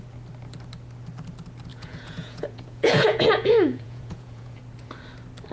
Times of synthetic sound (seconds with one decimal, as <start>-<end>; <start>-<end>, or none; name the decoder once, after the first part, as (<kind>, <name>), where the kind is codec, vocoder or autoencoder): 1.7-4.6 (vocoder, Vocos)